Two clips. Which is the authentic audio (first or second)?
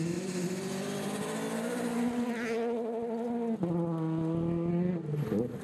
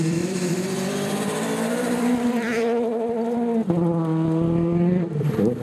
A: first